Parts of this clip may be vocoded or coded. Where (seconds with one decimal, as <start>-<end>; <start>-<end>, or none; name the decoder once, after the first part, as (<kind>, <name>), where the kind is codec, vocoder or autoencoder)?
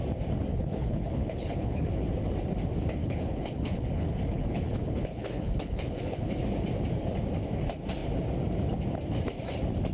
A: 0.5-2.1 (codec, HILCodec); 3.0-6.3